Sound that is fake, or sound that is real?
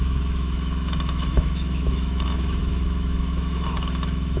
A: fake